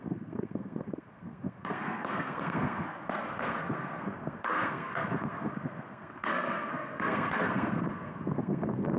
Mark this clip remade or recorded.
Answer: remade